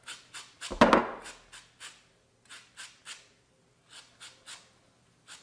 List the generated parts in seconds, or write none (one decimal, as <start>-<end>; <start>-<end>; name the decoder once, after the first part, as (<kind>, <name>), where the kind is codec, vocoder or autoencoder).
none